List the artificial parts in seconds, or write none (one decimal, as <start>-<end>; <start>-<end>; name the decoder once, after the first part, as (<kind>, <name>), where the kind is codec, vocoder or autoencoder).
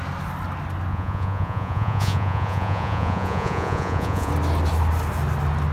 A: 0.9-4.3 (vocoder, Vocos)